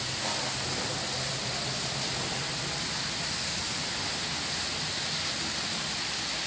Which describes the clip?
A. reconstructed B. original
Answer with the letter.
B